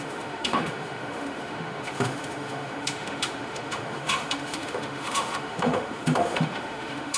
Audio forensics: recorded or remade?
remade